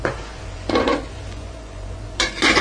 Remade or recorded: remade